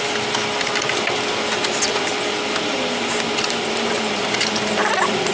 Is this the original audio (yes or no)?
yes